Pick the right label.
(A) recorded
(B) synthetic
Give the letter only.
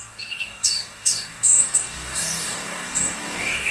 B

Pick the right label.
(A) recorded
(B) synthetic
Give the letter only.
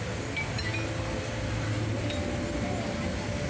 A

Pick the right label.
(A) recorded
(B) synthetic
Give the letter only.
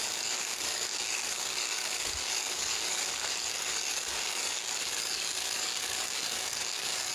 B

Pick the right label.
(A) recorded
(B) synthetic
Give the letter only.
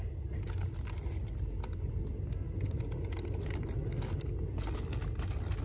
A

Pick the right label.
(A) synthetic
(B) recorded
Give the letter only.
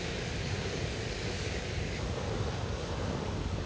A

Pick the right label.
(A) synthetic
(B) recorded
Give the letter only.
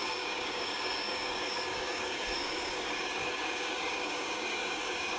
A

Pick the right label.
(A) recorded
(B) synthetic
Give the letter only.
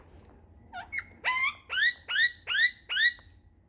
A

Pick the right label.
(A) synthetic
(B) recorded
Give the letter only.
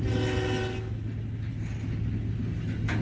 B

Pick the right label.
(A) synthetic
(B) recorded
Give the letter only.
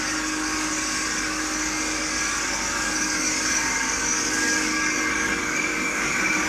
A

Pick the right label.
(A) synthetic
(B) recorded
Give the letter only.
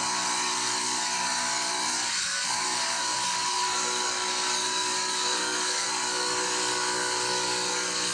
A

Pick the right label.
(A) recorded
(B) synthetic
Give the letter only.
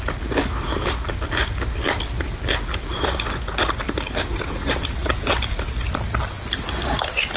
A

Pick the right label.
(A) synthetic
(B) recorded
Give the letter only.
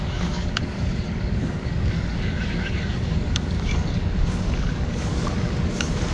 A